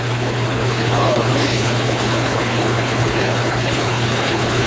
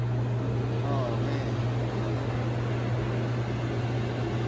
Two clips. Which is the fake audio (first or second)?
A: first